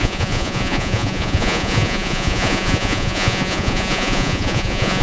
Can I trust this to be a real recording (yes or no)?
no